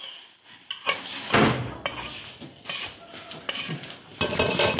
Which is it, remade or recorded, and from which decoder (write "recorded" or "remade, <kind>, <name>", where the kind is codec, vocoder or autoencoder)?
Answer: recorded